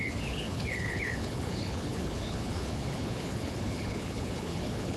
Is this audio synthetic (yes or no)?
yes